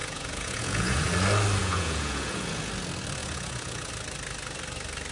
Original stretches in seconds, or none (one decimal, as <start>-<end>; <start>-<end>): 1.1-1.6; 2.7-3.2; 3.9-5.1